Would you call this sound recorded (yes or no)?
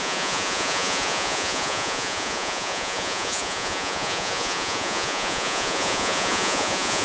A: no